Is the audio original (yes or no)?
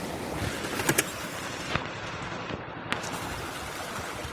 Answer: yes